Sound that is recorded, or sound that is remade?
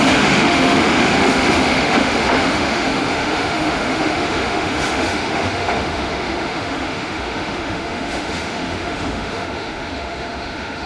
remade